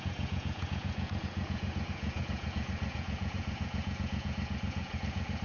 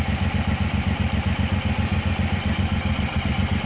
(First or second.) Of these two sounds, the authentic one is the second